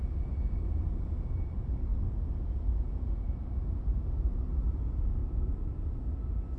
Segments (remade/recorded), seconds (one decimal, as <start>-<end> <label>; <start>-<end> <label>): 0.0-6.6 recorded